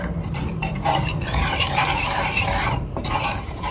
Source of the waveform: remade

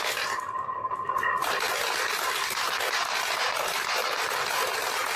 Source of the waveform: recorded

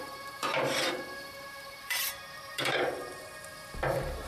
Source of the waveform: remade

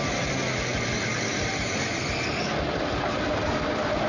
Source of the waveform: recorded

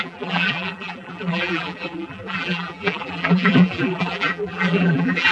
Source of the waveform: remade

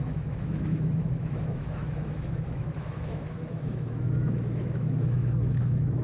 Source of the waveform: remade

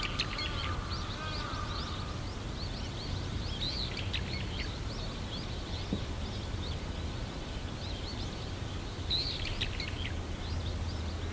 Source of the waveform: recorded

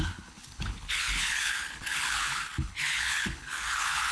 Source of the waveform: remade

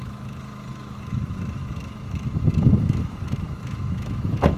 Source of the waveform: remade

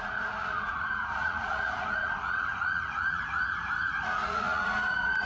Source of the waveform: remade